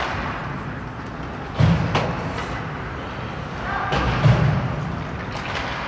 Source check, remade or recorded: recorded